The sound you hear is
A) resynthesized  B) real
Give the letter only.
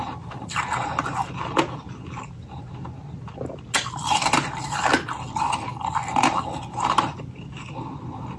B